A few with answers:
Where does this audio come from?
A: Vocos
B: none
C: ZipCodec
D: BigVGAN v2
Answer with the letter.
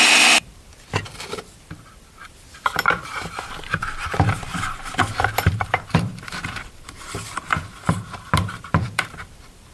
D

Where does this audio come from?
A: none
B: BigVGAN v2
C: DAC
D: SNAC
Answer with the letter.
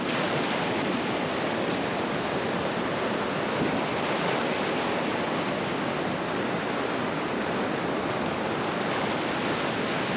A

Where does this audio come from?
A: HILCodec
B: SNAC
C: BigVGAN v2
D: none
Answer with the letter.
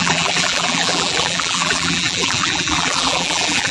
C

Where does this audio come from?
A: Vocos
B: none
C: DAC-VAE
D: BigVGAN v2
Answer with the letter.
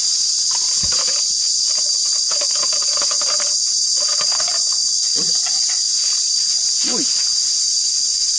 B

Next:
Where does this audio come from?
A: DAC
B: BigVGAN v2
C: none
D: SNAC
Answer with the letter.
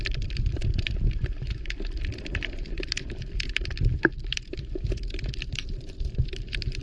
B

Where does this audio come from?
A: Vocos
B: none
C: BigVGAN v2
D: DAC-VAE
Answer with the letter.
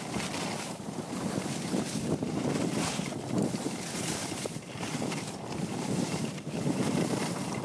C